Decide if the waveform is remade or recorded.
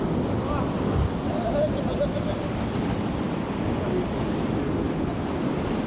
recorded